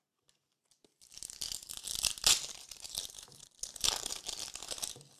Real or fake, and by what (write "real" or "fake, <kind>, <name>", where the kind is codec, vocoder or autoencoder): real